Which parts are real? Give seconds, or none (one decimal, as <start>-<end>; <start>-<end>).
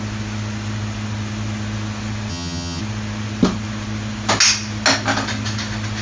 0.0-2.3; 2.8-6.0